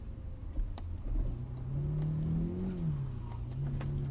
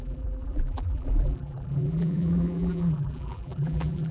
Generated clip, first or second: second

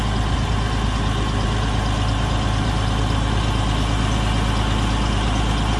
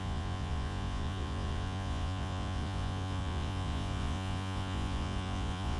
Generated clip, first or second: second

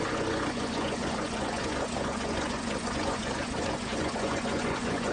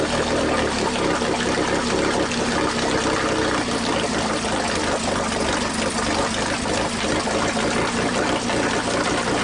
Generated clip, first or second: first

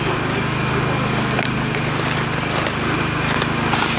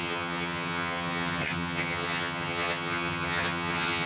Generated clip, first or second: second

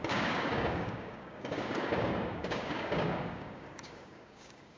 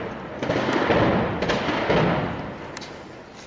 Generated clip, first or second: first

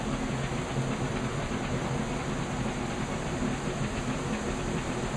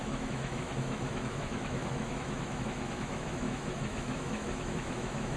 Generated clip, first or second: second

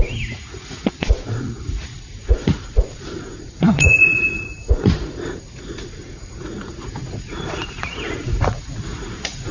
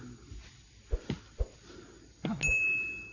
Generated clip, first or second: first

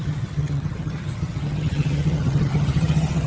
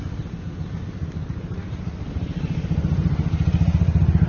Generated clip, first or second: first